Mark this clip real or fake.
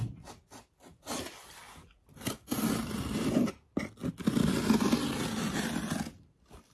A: real